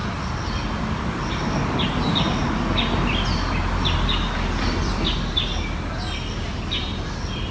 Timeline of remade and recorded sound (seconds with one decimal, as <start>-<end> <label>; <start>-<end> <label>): 0.0-7.5 recorded

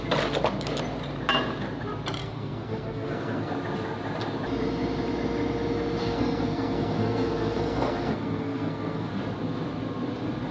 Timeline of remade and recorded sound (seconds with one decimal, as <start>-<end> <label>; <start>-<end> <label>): 0.0-2.2 recorded; 2.2-3.5 remade; 3.5-6.0 recorded; 6.0-9.1 remade; 9.1-10.5 recorded

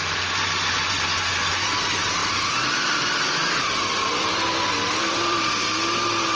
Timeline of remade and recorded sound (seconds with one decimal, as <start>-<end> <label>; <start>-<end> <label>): 0.0-2.2 recorded; 2.2-5.4 remade; 5.4-6.4 recorded